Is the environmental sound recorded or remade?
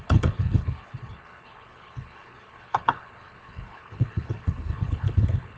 remade